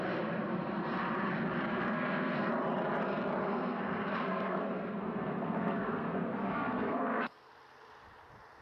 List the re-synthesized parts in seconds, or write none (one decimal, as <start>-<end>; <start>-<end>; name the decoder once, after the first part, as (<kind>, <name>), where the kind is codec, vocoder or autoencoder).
1.7-2.5 (codec, SNAC); 3.3-7.5